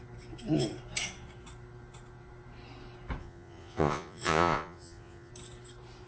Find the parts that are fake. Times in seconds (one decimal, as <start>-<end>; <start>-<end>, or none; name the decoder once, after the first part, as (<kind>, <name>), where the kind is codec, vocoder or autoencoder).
3.2-5.3 (vocoder, Vocos)

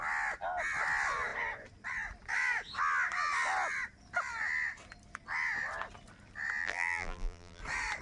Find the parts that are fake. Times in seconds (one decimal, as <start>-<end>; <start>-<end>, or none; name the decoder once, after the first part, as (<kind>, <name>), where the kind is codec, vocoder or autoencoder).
6.6-7.6 (vocoder, BigVGAN v2)

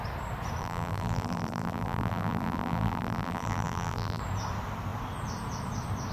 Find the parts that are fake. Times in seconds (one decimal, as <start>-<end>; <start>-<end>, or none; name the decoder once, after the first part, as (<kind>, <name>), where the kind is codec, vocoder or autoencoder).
0.6-4.2 (vocoder, BigVGAN v2)

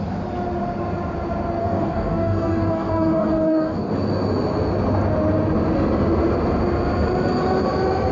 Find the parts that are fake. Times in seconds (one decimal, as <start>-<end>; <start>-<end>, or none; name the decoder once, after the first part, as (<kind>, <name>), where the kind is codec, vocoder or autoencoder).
1.6-3.9 (codec, DAC)

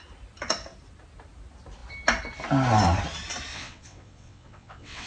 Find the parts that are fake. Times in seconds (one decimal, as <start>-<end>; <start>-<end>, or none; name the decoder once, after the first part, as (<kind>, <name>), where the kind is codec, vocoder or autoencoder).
3.5-5.1 (vocoder, WaveNeXt)

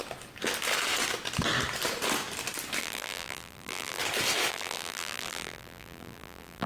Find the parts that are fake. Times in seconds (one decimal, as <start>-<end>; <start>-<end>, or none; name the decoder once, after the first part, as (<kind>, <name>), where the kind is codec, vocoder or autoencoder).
2.8-4.0 (vocoder, BigVGAN v2); 4.5-6.7

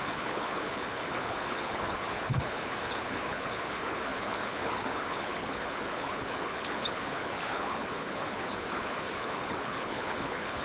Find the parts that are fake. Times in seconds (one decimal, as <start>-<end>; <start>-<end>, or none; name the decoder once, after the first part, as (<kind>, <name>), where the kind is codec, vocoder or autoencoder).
0.0-10.6 (codec, HILCodec)